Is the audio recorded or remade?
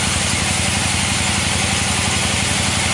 recorded